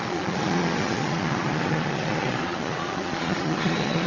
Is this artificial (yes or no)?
yes